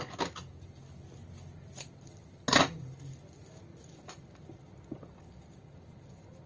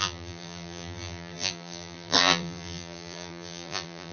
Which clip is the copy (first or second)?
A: second